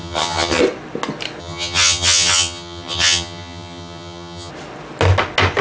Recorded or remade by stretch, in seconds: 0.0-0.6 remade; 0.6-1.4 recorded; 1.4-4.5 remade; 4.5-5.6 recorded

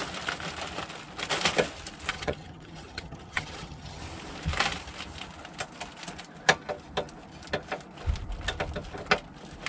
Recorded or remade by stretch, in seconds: 0.0-2.1 recorded; 2.1-4.0 remade; 4.0-9.7 recorded

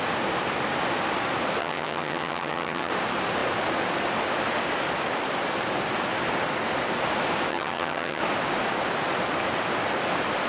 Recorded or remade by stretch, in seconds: 0.0-1.6 recorded; 1.6-2.9 remade; 2.9-7.5 recorded; 7.5-8.2 remade; 8.2-10.5 recorded

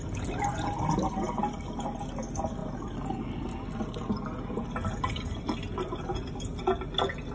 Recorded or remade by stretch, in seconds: 0.0-7.3 recorded

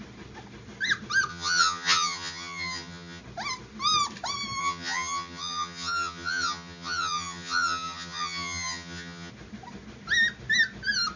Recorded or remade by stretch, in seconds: 0.0-1.3 recorded; 1.3-3.2 remade; 3.2-4.6 recorded; 4.6-9.3 remade; 9.3-11.2 recorded